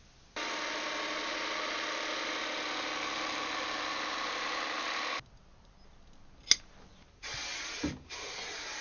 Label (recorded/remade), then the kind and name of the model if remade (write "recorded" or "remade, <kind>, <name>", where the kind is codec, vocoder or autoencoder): recorded